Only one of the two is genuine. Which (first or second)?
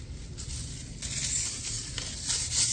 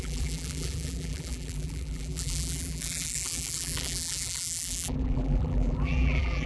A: first